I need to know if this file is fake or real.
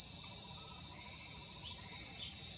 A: real